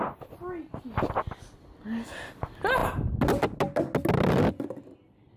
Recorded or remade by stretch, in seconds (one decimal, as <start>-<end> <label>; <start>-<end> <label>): 0.0-5.4 recorded